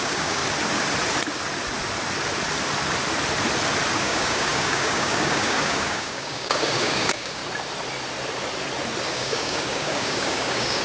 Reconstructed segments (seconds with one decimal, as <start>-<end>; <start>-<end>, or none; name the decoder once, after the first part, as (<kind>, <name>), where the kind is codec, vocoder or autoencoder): 0.0-0.4 (codec, DAC); 3.9-7.4; 9.1-10.8